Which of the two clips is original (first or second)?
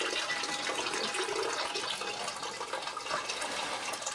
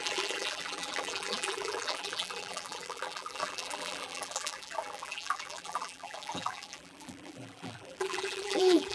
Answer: first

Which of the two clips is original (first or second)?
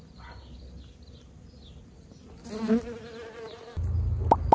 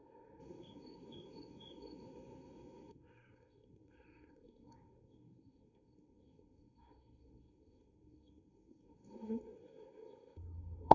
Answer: first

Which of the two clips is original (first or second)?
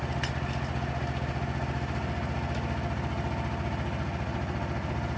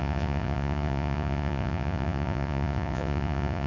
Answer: first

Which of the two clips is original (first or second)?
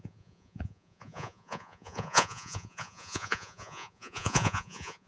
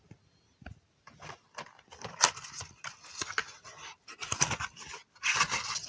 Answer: second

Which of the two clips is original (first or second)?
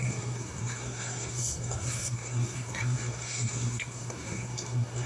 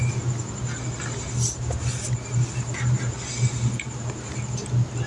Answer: second